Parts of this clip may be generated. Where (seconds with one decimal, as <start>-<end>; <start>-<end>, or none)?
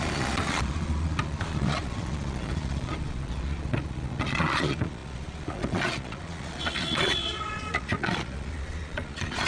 0.0-9.5